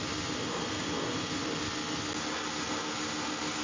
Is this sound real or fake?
real